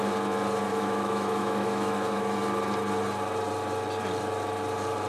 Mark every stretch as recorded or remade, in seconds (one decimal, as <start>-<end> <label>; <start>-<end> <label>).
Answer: 0.0-0.7 recorded; 0.7-2.4 remade; 2.4-5.1 recorded